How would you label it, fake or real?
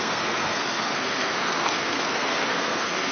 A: fake